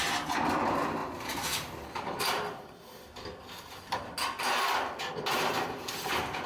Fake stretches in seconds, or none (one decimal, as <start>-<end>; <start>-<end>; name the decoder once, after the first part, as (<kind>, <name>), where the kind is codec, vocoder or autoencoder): 1.0-2.2 (vocoder, BigVGAN v2)